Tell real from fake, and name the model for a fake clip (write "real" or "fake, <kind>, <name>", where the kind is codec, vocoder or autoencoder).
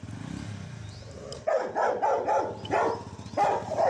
real